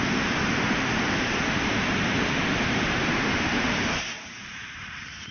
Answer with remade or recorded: remade